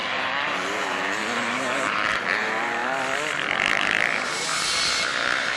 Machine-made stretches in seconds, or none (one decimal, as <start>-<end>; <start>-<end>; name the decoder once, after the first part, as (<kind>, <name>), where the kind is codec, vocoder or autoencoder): 0.0-2.8 (vocoder, BigVGAN v2); 3.7-5.6